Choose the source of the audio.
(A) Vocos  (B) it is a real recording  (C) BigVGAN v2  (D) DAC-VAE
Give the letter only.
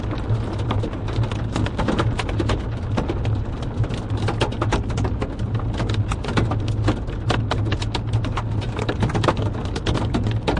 B